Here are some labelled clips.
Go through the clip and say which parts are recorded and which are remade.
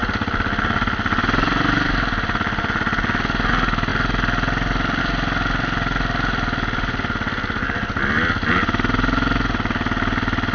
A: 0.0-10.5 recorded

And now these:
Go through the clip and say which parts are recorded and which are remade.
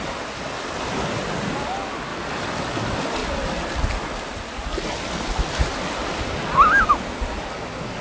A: 0.0-2.1 recorded; 2.1-2.6 remade; 2.6-3.2 recorded; 3.2-4.0 remade; 4.0-6.0 recorded; 6.0-6.9 remade; 6.9-8.0 recorded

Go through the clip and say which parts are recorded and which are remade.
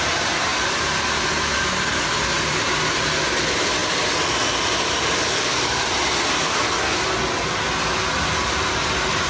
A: 0.0-3.8 recorded; 3.8-6.6 remade; 6.6-9.3 recorded